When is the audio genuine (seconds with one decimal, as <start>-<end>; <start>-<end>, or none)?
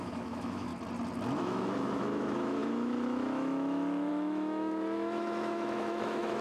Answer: 0.7-1.4